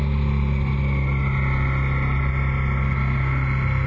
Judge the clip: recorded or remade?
recorded